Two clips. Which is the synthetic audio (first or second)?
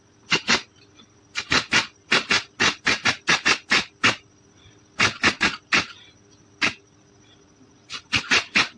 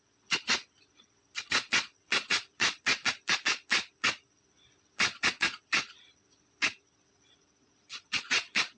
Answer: second